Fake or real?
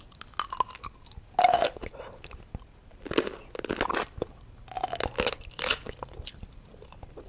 real